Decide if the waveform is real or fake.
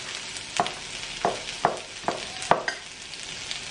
real